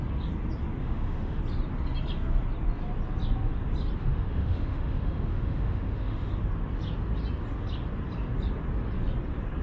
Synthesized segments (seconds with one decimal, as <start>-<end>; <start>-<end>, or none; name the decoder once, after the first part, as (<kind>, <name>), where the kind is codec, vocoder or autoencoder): 0.8-1.4 (autoencoder, DAC-VAE); 4.0-6.3